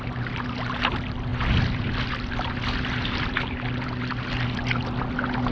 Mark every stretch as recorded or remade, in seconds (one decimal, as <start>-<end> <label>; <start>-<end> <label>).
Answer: 0.0-5.5 recorded

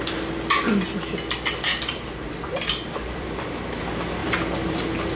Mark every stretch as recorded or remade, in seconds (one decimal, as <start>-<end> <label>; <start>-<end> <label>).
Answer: 0.0-1.7 recorded; 1.7-3.8 remade; 3.8-4.2 recorded; 4.2-4.8 remade; 4.8-5.2 recorded

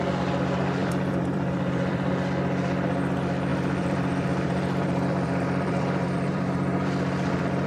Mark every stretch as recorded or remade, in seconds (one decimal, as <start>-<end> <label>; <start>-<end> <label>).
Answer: 0.0-0.8 recorded; 0.8-2.1 remade; 2.1-3.5 recorded; 3.5-7.7 remade

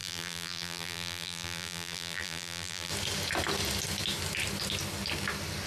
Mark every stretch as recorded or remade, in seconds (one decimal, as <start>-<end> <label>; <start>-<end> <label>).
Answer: 0.0-2.9 remade; 2.9-5.7 recorded

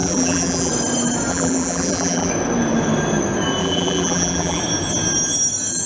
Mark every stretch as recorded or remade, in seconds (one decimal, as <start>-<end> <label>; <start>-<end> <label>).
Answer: 0.0-0.7 remade; 0.7-1.3 recorded; 1.3-2.3 remade; 2.3-3.6 recorded; 3.6-4.6 remade; 4.6-5.9 recorded

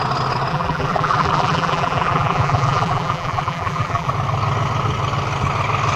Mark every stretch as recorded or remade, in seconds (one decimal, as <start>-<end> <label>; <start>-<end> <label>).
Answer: 0.0-0.5 recorded; 0.5-4.1 remade; 4.1-6.0 recorded

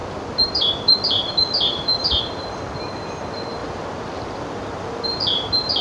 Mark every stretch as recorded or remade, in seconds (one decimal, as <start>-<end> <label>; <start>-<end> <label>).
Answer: 0.0-2.2 remade; 2.2-3.6 recorded; 3.6-5.8 remade

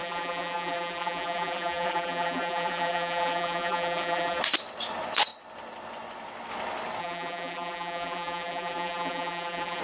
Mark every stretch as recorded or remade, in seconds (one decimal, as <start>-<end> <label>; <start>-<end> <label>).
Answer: 0.0-4.4 remade; 4.4-7.0 recorded; 7.0-9.8 remade